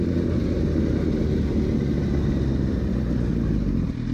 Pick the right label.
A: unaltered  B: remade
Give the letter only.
A